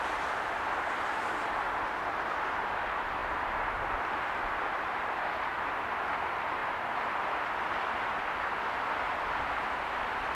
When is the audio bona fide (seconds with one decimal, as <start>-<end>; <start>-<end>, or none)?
0.0-10.3